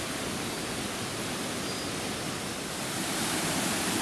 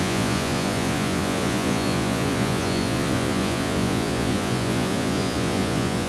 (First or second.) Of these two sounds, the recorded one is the first